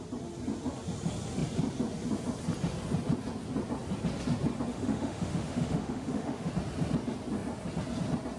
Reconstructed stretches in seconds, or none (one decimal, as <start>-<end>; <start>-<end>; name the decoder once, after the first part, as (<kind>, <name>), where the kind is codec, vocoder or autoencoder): 4.7-6.5 (autoencoder, DAC-VAE)